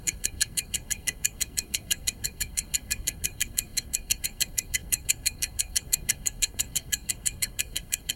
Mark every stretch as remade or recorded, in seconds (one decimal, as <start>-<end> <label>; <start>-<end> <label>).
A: 0.0-8.2 remade